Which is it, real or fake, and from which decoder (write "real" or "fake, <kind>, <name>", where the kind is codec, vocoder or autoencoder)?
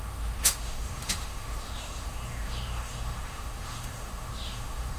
fake, autoencoder, DAC-VAE